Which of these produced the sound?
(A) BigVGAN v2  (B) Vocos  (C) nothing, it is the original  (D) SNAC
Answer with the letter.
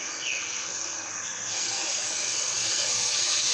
D